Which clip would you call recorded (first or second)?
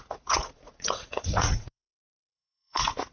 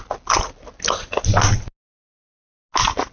second